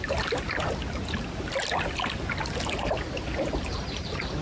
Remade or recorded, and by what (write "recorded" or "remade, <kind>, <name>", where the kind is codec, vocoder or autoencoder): recorded